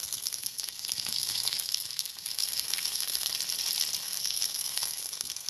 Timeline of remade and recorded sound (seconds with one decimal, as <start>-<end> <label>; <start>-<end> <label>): 0.0-3.3 remade; 3.3-4.0 recorded; 4.0-5.5 remade